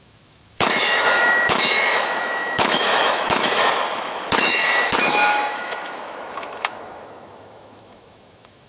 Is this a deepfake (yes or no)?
yes